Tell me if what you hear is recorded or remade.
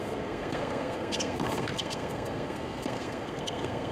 remade